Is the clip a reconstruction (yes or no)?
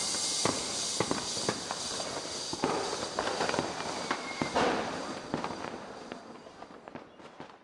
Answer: no